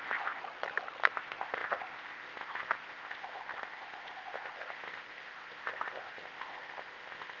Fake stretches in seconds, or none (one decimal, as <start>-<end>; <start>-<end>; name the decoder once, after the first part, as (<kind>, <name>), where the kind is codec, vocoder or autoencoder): 0.0-0.4 (codec, ZipCodec); 1.1-7.4